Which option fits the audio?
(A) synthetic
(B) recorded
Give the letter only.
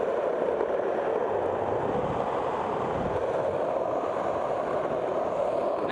B